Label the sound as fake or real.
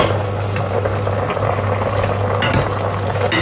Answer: real